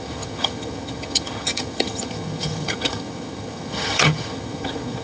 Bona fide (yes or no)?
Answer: no